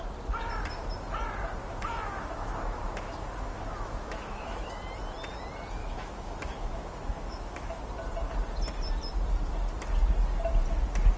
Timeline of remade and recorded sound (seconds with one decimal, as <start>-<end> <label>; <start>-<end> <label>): 0.0-1.6 recorded; 1.6-4.8 remade; 4.8-5.8 recorded; 5.8-7.8 remade; 7.8-11.2 recorded